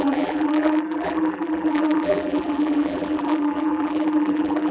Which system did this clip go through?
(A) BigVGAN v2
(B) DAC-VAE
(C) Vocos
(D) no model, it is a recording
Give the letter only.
A